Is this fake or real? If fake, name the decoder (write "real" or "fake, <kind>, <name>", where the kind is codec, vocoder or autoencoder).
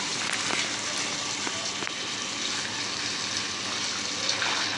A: real